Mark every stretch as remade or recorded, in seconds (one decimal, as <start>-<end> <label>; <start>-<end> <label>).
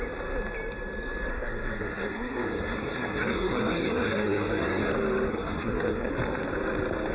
0.0-1.3 recorded; 1.3-4.8 remade; 4.8-5.3 recorded; 5.3-6.1 remade; 6.1-7.1 recorded